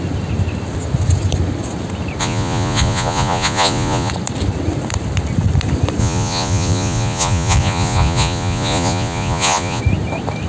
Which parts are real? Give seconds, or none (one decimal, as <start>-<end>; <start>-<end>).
0.0-2.2; 4.1-6.0; 9.8-10.5